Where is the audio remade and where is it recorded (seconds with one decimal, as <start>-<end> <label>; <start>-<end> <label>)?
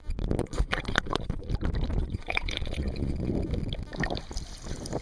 0.0-0.4 recorded; 0.4-1.5 remade; 1.5-2.0 recorded; 2.0-3.3 remade; 3.3-5.0 recorded